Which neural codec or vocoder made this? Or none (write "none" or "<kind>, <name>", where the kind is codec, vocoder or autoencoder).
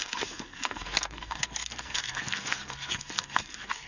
codec, SNAC